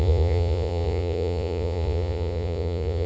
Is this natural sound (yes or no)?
no